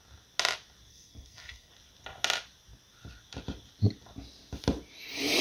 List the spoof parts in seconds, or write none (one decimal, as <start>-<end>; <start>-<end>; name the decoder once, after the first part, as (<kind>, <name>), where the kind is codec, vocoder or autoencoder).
0.9-1.7 (codec, SNAC)